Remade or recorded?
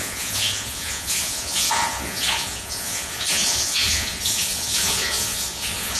remade